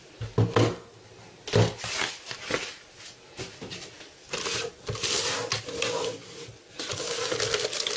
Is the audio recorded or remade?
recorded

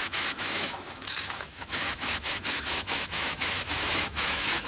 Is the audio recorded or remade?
remade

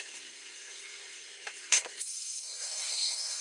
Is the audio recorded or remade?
remade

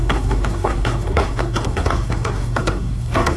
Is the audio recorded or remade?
remade